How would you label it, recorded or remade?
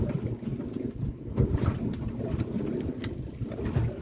recorded